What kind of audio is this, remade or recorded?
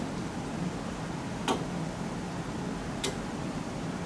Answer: recorded